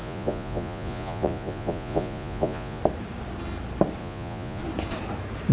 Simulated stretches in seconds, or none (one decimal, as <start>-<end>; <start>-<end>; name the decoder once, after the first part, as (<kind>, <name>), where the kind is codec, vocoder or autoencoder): 0.0-2.8 (vocoder, Vocos); 4.0-4.6